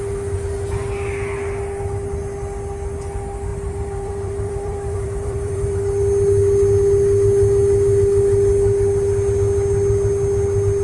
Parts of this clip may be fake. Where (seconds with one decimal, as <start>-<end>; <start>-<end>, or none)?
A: 3.5-5.8

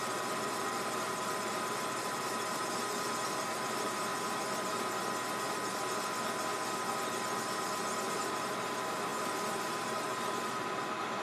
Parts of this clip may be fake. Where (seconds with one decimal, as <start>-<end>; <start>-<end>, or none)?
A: 0.0-4.1; 8.1-11.2

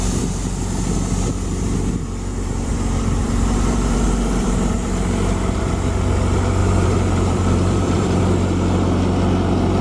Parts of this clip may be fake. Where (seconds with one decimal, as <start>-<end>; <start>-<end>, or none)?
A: 2.3-5.7; 6.6-8.2